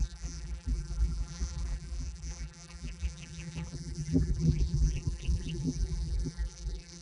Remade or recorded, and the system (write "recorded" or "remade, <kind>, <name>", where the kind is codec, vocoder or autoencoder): remade, vocoder, BigVGAN v2